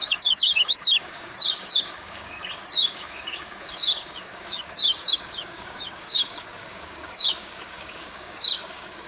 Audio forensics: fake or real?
fake